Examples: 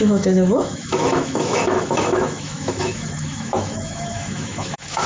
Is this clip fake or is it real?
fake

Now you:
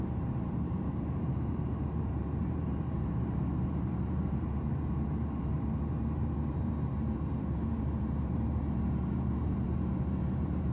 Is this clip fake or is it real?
fake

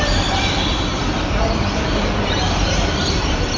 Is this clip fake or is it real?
fake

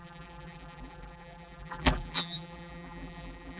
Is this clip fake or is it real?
fake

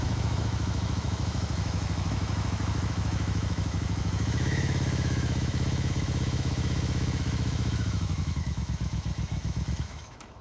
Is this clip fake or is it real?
fake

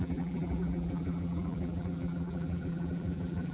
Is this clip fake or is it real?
fake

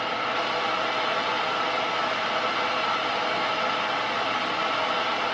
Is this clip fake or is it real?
real